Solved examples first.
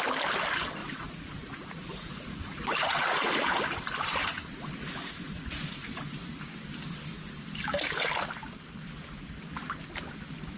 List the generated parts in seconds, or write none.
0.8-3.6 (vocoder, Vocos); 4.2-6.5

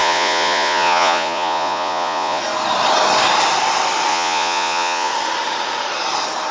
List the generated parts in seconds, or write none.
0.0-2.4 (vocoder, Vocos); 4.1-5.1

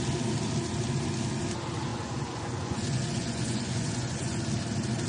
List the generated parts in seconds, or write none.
1.9-4.4 (vocoder, Vocos)

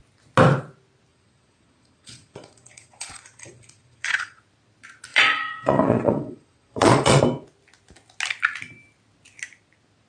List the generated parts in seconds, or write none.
1.1-4.4 (vocoder, Vocos); 5.1-7.2

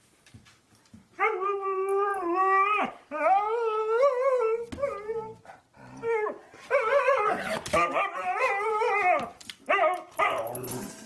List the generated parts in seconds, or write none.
6.9-7.4 (vocoder, Vocos)

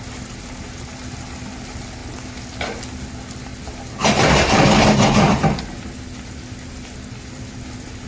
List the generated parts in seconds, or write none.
none

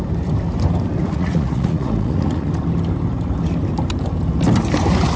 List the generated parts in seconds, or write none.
1.0-2.5 (vocoder, Vocos)

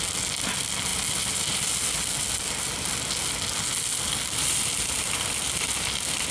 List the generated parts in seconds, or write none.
none